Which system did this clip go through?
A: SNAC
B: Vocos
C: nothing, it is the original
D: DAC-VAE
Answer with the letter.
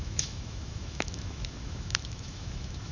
D